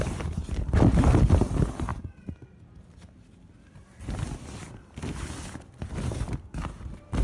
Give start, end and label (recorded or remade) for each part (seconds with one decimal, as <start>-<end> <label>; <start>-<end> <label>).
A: 0.0-7.2 recorded

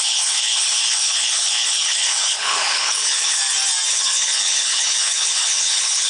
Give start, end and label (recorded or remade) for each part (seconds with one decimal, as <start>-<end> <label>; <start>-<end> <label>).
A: 0.0-3.4 remade; 3.4-3.9 recorded; 3.9-6.1 remade